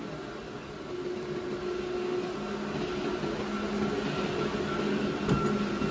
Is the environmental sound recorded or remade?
recorded